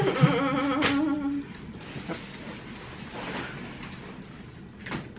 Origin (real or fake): real